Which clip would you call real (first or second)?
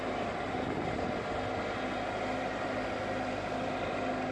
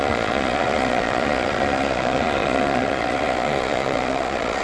first